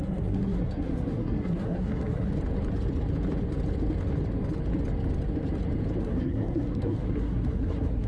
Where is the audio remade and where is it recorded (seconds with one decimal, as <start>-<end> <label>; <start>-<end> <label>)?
0.0-2.3 remade; 2.3-6.0 recorded; 6.0-8.1 remade